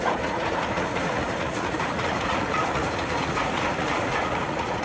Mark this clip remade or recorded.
remade